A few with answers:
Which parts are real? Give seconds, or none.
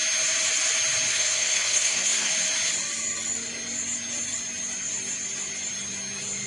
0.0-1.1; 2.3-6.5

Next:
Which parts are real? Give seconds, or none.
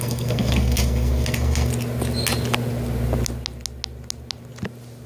1.7-5.1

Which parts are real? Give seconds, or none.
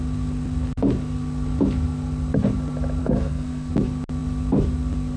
0.0-3.0; 3.7-5.2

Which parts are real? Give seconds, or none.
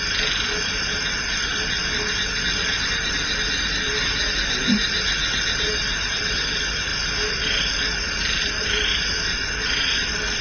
0.0-10.4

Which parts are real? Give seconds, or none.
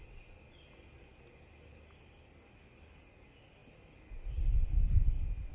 0.0-5.5